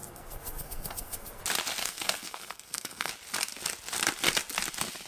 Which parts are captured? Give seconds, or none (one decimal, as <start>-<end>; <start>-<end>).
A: 1.4-1.8; 3.1-5.1